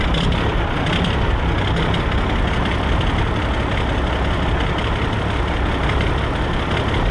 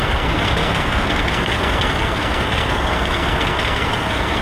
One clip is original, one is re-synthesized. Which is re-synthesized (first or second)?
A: second